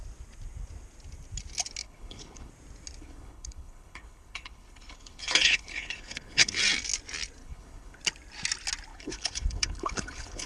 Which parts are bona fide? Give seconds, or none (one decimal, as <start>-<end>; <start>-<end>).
0.0-1.8; 2.5-3.0; 6.6-7.4; 8.0-8.9